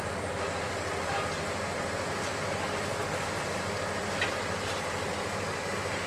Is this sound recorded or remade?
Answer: recorded